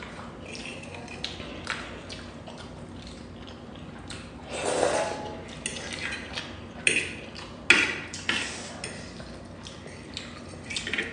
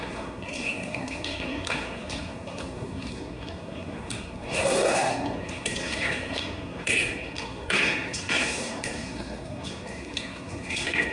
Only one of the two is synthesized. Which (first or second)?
second